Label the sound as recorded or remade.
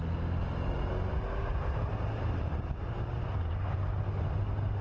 recorded